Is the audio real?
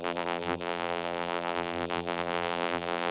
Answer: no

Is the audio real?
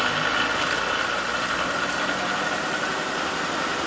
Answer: yes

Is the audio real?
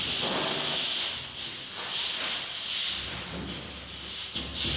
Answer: yes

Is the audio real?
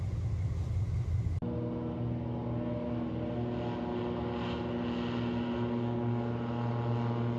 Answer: yes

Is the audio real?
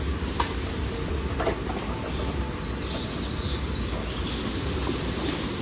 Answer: yes